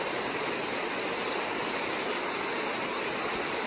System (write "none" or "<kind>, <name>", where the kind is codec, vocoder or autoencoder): none